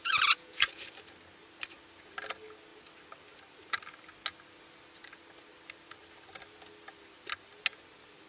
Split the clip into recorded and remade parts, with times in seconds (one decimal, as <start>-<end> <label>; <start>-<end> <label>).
0.0-0.8 remade; 0.8-8.3 recorded